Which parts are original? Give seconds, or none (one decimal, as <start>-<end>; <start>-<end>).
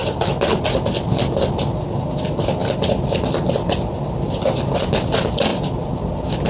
0.0-6.5